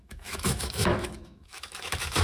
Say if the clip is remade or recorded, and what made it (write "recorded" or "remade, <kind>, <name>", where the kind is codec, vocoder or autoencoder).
remade, autoencoder, DAC-VAE